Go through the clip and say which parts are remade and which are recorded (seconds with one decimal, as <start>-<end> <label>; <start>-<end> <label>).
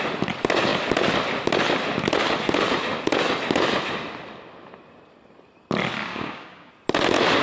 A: 0.0-6.1 recorded; 6.1-6.7 remade; 6.7-7.4 recorded